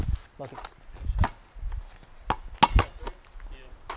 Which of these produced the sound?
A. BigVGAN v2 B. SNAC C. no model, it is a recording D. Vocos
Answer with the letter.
C